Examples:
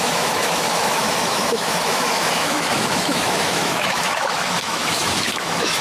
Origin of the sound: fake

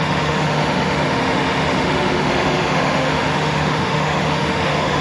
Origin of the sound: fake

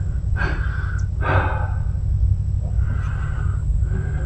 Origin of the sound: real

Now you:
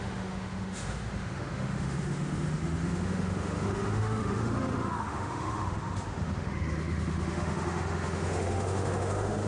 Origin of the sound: fake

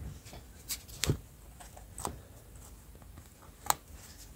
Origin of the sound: real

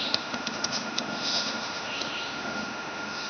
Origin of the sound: fake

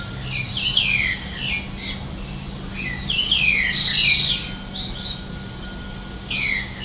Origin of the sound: real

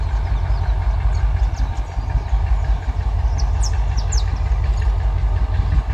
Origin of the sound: real